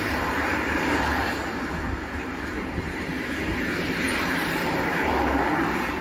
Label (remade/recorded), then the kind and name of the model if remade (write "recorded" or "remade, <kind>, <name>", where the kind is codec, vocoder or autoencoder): remade, vocoder, BigVGAN v2